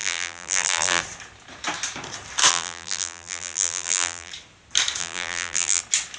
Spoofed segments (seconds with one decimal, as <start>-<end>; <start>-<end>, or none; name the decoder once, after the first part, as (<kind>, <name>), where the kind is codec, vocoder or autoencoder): 0.0-1.0 (vocoder, BigVGAN v2); 2.5-4.3; 5.0-5.8